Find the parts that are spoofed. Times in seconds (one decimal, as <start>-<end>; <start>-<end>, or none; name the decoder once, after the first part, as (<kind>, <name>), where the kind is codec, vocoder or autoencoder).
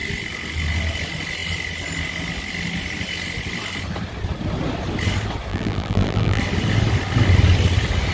5.5-6.4 (vocoder, BigVGAN v2)